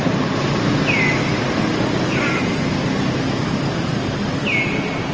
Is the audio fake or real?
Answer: real